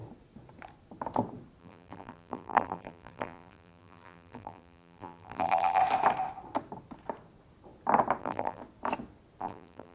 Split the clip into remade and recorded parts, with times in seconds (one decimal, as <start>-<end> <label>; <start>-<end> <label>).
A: 0.0-1.6 recorded; 1.6-5.8 remade; 5.8-8.2 recorded; 8.2-8.6 remade; 8.6-9.4 recorded; 9.4-9.9 remade